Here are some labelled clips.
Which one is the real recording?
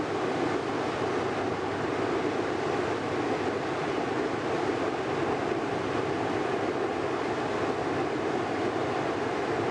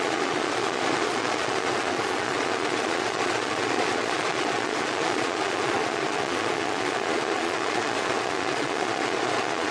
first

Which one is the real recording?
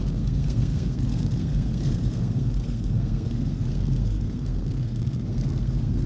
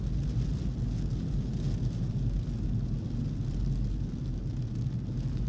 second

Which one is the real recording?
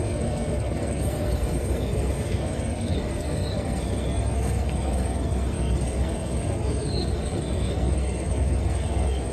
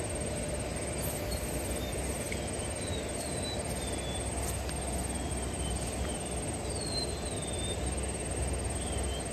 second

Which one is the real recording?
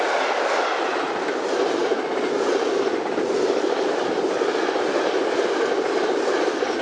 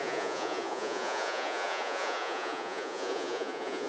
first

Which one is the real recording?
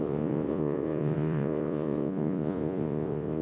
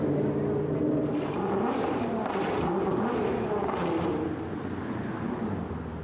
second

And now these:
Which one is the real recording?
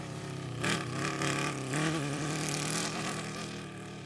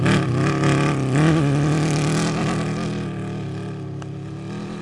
second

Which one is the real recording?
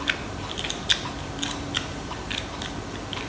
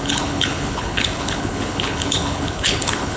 first